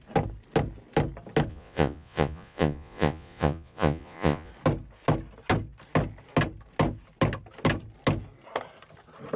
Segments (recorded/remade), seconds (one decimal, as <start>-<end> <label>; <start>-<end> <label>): 0.0-1.5 recorded; 1.5-4.5 remade; 4.5-9.4 recorded